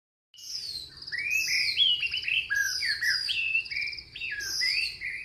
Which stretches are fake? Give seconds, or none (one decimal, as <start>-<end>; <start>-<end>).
none